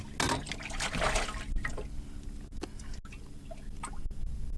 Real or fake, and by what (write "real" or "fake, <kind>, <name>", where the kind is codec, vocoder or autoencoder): real